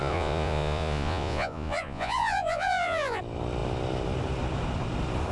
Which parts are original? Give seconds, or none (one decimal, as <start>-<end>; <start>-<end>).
3.2-5.3